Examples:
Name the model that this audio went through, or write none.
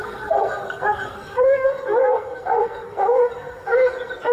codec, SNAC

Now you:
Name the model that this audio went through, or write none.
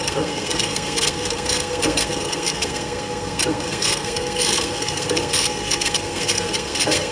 codec, SNAC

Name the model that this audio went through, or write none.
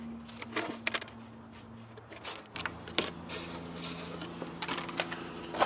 none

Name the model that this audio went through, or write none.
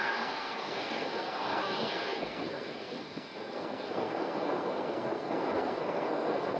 codec, SNAC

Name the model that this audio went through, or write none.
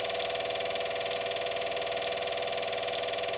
none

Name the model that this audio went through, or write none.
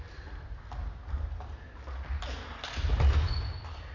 none